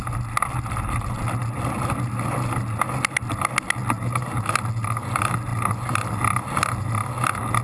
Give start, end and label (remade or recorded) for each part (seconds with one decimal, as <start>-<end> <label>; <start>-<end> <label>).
0.0-7.6 recorded